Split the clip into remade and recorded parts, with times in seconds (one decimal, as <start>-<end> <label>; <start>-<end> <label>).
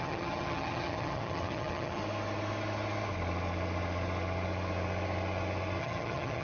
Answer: 0.0-2.0 remade; 2.0-5.8 recorded; 5.8-6.4 remade